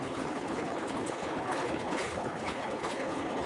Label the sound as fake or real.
fake